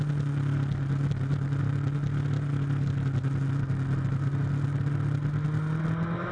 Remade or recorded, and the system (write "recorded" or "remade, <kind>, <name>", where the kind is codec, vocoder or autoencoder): recorded